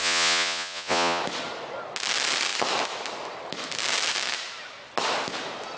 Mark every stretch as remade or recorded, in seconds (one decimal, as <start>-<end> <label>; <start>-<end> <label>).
0.0-1.2 remade; 1.2-5.8 recorded